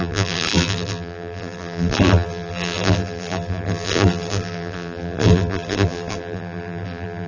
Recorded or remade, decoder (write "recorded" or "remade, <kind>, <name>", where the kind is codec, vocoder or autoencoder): remade, vocoder, BigVGAN v2